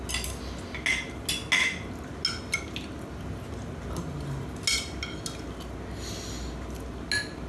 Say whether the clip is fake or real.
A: real